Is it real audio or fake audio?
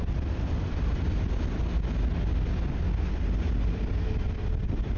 real